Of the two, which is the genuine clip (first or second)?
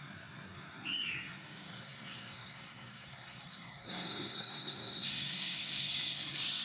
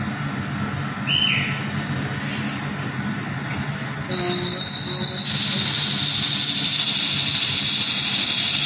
second